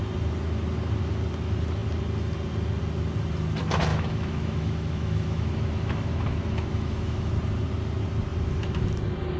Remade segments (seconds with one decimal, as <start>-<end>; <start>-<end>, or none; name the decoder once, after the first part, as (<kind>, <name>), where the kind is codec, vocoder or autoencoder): 3.9-7.3 (autoencoder, DAC-VAE)